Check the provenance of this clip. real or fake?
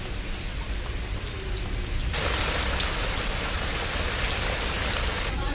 real